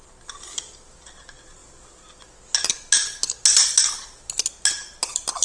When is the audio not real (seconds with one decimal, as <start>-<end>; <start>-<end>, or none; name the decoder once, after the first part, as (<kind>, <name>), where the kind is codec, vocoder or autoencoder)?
none